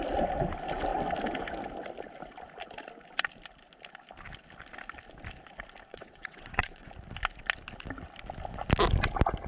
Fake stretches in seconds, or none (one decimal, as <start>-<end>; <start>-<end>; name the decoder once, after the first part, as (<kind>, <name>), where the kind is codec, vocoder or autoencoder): 5.9-6.9 (vocoder, WaveNeXt)